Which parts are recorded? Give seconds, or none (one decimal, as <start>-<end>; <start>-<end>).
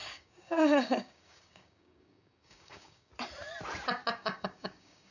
3.1-4.1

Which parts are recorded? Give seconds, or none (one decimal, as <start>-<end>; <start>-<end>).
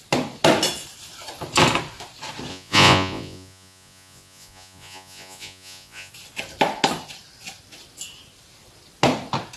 0.0-2.5; 6.1-9.6